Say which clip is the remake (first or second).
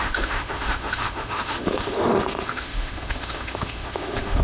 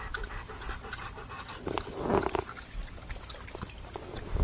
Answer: first